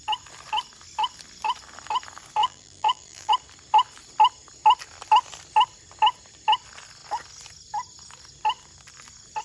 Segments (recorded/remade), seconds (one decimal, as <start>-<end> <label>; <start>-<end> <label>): 0.0-2.4 recorded; 2.4-3.3 remade; 3.3-9.4 recorded